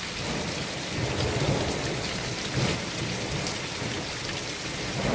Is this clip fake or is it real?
real